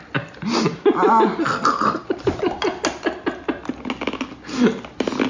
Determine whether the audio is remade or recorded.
recorded